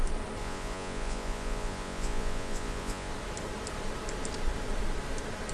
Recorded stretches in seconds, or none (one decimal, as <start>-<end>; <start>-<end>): 0.0-0.4; 3.1-5.5